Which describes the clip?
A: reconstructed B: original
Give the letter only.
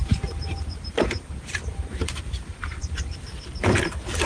A